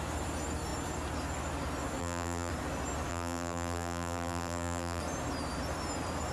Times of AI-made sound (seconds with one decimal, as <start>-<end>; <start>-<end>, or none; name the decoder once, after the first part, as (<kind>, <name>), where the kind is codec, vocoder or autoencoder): 2.0-2.5 (vocoder, BigVGAN v2); 3.1-5.0

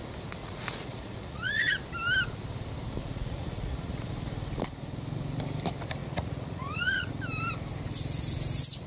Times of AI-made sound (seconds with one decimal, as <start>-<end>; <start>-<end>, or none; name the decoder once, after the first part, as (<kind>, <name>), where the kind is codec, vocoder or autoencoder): 0.4-1.8 (vocoder, Vocos); 3.0-4.1; 6.0-7.1

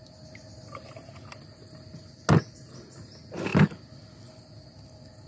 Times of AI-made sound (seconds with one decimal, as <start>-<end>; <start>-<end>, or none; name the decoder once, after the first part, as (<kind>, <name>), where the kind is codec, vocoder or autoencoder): none

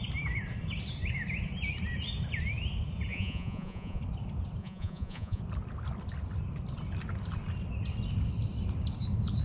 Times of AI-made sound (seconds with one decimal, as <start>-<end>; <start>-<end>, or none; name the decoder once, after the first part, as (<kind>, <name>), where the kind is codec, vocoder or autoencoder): 3.1-4.0 (vocoder, Vocos); 4.6-5.4

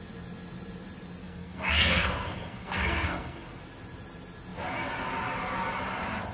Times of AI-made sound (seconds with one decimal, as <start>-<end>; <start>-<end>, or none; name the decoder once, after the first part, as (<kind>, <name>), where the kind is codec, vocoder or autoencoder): 1.2-3.6 (codec, SNAC)